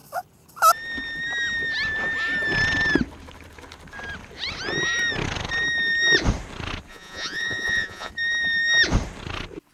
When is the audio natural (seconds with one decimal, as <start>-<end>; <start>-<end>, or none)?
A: 0.0-6.9; 8.1-9.7